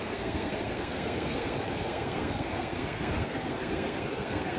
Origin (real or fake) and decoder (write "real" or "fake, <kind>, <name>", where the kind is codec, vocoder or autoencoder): fake, codec, SNAC